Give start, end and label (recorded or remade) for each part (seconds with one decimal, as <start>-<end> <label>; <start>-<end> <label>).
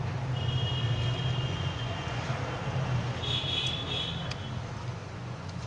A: 0.0-1.4 recorded; 1.4-2.2 remade; 2.2-5.0 recorded; 5.0-5.7 remade